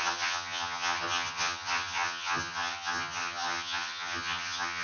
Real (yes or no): no